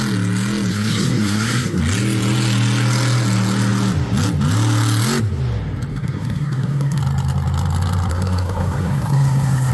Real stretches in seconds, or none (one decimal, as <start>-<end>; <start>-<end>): 0.0-0.7; 1.8-5.9; 7.0-8.1